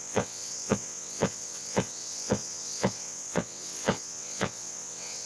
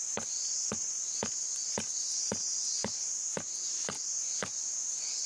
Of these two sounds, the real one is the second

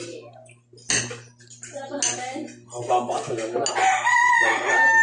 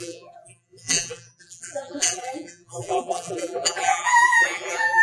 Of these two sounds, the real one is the first